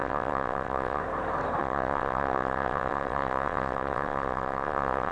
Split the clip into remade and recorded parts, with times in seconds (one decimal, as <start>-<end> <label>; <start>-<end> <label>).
0.0-1.0 remade; 1.0-1.6 recorded; 1.6-5.1 remade